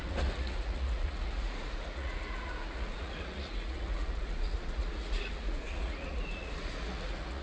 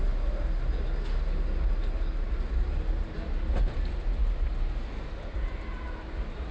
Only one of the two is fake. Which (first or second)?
first